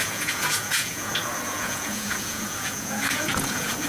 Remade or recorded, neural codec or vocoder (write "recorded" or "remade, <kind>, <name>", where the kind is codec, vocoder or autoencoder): remade, vocoder, Vocos